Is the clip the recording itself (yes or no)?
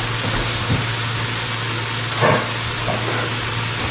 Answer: yes